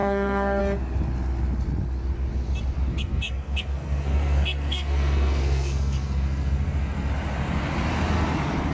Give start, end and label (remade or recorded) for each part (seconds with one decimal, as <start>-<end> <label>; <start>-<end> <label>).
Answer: 0.0-0.6 remade; 0.6-2.9 recorded; 2.9-7.1 remade; 7.1-8.7 recorded